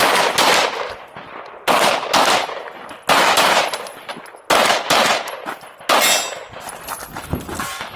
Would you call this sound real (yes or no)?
yes